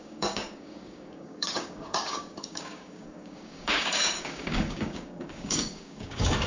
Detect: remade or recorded remade